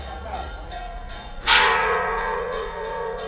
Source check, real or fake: fake